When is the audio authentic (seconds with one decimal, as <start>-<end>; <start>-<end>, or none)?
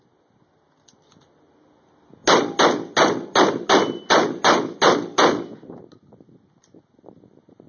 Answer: 0.0-7.7